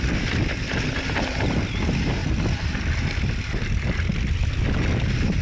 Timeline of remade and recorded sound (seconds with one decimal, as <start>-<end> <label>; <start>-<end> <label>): 0.0-5.4 recorded

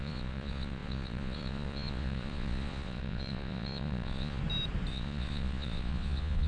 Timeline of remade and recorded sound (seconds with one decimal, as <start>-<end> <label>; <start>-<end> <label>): 0.0-4.4 remade; 4.4-4.9 recorded; 4.9-6.5 remade

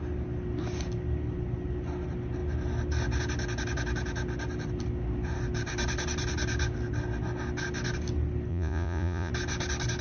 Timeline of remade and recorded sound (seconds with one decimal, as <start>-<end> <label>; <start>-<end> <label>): 0.0-8.5 recorded; 8.5-9.3 remade; 9.3-10.0 recorded

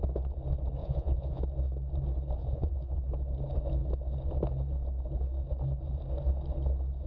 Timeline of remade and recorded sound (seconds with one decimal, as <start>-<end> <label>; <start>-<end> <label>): 0.0-0.8 recorded; 0.8-1.4 remade; 1.4-2.4 recorded; 2.4-3.0 remade; 3.0-7.1 recorded

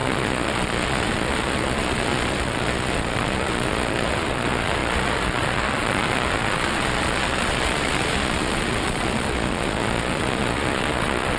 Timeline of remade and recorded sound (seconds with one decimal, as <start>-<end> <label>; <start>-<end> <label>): 0.0-11.4 remade

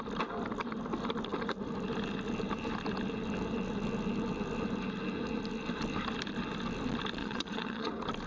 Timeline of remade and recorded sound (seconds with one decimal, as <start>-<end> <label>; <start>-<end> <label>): 0.0-7.2 recorded; 7.2-7.9 remade; 7.9-8.3 recorded

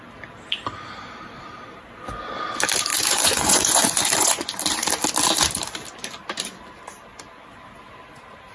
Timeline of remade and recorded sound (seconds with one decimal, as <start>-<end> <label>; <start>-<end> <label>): 0.0-2.9 recorded; 2.9-4.5 remade; 4.5-8.5 recorded